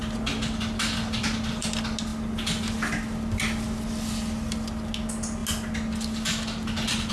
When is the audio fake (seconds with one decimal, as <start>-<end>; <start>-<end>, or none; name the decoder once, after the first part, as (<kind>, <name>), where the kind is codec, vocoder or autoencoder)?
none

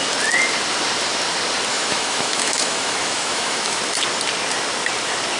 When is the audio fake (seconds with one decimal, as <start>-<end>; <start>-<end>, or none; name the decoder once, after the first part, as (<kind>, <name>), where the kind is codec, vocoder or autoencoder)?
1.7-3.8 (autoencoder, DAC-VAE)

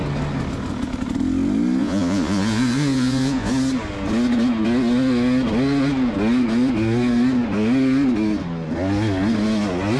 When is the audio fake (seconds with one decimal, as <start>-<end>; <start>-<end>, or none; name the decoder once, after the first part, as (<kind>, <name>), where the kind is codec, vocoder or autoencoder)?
1.8-3.5 (vocoder, Vocos)

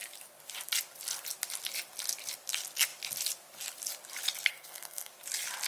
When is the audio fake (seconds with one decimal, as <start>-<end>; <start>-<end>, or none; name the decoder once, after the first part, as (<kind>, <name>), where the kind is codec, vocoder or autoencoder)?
4.5-5.1 (codec, SNAC)

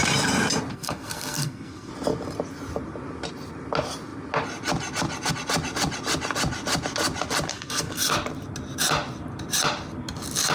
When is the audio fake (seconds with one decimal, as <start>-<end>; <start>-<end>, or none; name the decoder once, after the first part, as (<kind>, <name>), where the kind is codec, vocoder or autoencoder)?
0.7-1.9 (codec, SNAC); 7.5-8.1